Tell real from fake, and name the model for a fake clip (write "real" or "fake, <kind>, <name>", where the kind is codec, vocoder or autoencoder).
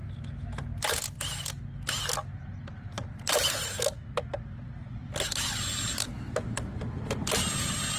real